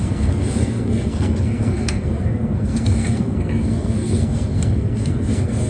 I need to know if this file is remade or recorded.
remade